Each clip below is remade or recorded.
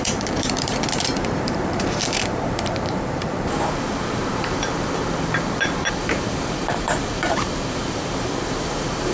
remade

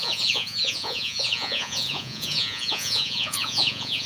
remade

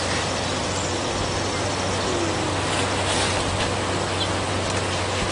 recorded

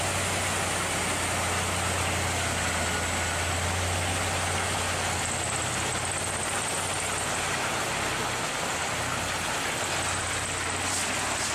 recorded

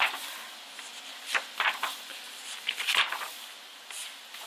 recorded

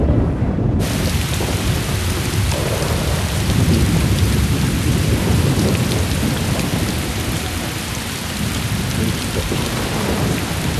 remade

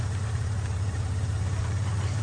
remade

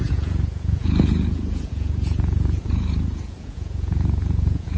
remade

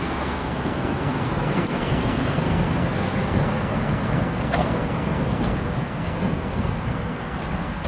remade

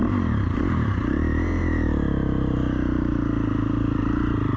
remade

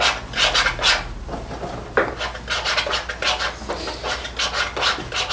recorded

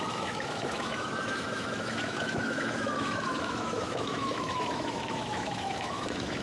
remade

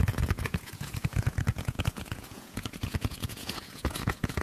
remade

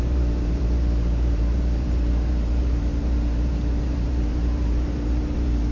remade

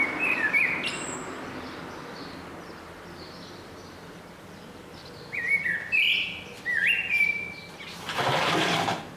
recorded